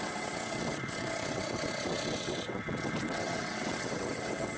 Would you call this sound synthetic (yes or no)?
yes